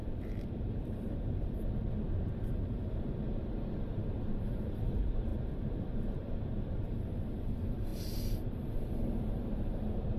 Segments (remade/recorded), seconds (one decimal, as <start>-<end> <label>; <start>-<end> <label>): 0.0-10.2 remade